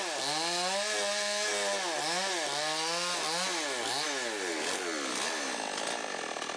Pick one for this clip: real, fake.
real